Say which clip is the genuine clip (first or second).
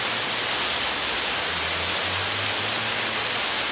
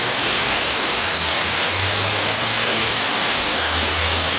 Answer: first